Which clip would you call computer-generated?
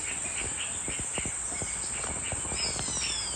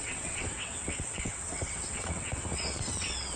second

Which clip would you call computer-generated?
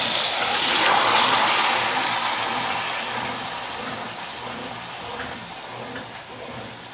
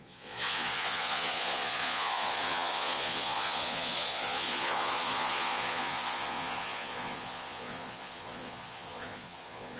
second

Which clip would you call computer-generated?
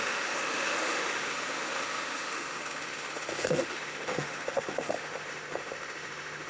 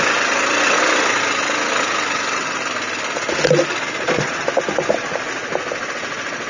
first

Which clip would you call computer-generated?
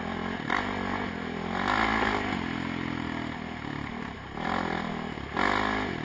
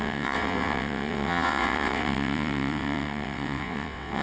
second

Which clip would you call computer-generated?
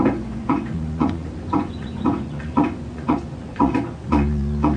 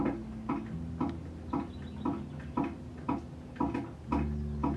first